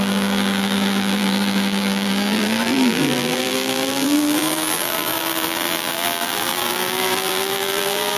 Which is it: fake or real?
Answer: fake